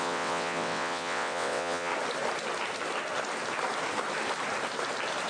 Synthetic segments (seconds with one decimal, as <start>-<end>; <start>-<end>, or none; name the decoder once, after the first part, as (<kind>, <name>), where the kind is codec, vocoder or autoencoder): 0.0-1.9 (vocoder, WaveNeXt)